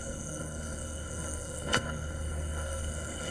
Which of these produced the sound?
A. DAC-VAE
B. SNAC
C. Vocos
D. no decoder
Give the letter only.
B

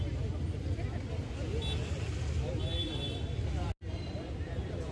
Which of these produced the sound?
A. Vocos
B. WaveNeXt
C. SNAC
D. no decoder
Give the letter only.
D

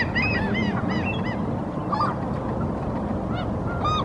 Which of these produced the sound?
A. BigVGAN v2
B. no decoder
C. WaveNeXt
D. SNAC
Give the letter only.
B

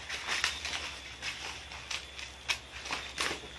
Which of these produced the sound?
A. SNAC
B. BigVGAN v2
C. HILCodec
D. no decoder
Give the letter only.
D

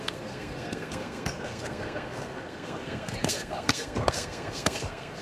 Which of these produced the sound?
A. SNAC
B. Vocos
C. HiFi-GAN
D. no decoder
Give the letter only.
A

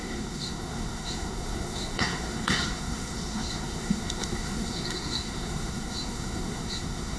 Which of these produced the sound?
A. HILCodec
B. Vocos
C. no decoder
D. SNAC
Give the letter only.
D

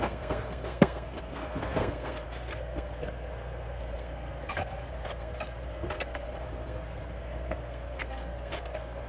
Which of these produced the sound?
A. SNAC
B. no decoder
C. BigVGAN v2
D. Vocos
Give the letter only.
A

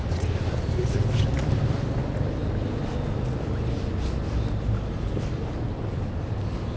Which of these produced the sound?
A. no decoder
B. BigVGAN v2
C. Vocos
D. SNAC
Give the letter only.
A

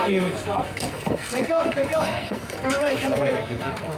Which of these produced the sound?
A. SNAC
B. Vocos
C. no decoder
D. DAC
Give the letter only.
A